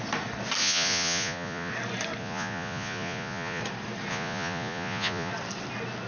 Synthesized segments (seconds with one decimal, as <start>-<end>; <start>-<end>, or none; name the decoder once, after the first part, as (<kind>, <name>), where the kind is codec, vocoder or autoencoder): 0.6-1.7 (vocoder, Vocos); 2.2-3.6; 4.1-5.3